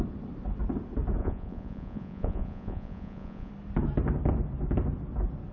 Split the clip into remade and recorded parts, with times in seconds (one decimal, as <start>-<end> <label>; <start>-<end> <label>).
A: 0.0-1.2 recorded; 1.2-3.5 remade; 3.5-5.5 recorded